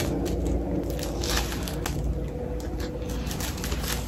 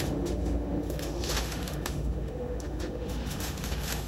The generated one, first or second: second